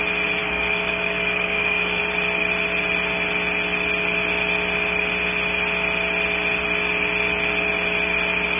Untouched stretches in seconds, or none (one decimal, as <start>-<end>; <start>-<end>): 0.0-0.4; 2.0-8.6